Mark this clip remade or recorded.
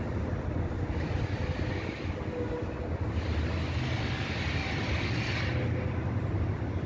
recorded